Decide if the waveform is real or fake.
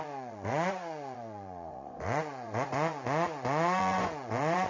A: fake